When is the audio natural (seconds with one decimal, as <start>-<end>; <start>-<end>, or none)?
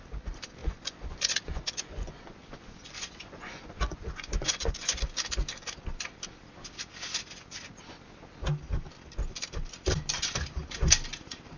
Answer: 0.0-0.6; 5.0-11.6